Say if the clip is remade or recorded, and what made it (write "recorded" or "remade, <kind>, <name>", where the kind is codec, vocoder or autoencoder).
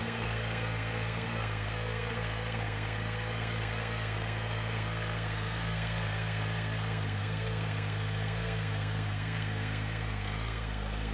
remade, codec, SNAC